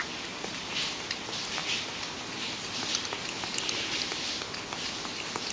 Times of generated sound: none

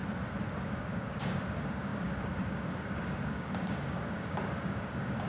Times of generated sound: 0.6-5.3 (codec, DAC)

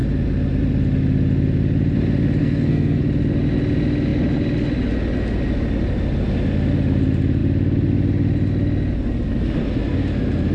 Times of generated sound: 2.4-3.0 (codec, SNAC)

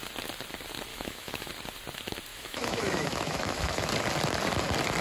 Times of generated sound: 0.9-1.5 (autoencoder, DAC-VAE); 2.3-3.9

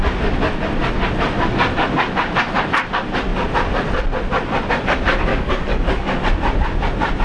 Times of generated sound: 5.3-6.2 (codec, DAC)